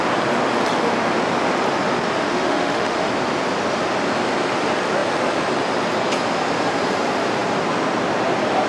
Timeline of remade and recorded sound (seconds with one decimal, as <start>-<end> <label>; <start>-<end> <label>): 0.0-2.2 recorded; 2.2-3.1 remade; 3.1-8.7 recorded